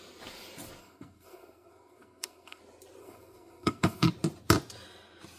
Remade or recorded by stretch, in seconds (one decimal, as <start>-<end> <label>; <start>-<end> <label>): 0.0-0.8 recorded; 0.8-2.6 remade; 2.6-3.0 recorded; 3.0-4.1 remade; 4.1-5.4 recorded